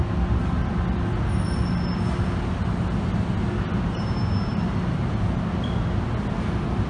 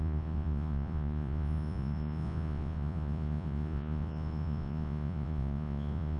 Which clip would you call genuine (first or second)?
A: first